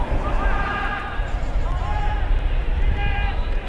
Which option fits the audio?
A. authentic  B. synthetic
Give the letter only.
A